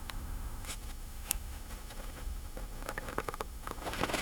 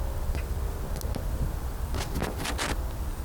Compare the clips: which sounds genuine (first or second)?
second